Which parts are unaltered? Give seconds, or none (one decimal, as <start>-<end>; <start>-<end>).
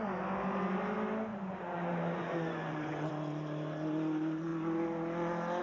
0.0-1.3; 3.1-5.6